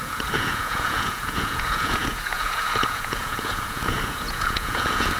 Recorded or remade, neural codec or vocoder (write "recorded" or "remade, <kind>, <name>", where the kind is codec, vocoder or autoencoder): remade, vocoder, Vocos